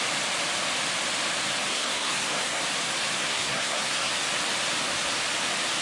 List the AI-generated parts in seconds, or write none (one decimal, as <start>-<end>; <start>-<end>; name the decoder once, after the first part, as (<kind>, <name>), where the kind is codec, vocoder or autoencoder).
1.7-2.6 (codec, SNAC); 3.2-4.1